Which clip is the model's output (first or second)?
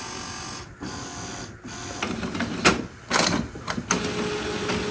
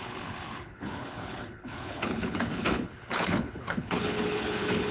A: second